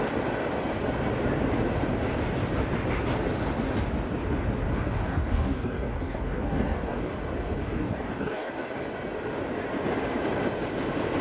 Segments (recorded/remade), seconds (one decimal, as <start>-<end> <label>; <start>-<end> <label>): 0.0-4.7 recorded; 4.7-7.1 remade; 7.1-7.6 recorded; 7.6-8.5 remade; 8.5-11.2 recorded